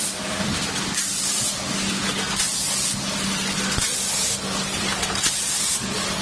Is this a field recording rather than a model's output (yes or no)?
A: yes